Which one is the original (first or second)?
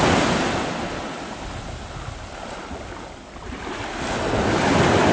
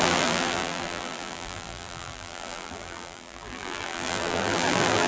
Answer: first